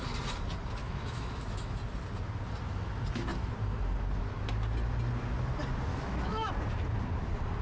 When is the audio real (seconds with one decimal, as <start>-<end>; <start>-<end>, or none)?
0.0-0.8; 1.8-5.9; 6.5-7.6